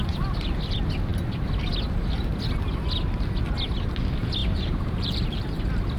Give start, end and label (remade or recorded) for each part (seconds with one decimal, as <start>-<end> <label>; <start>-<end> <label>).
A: 0.0-4.4 recorded; 4.4-5.6 remade; 5.6-6.0 recorded